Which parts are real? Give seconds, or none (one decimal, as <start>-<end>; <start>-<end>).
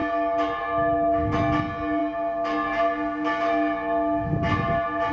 0.0-5.1